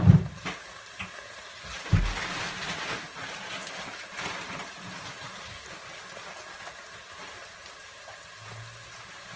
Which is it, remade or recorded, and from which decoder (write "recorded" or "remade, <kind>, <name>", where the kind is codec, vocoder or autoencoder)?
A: recorded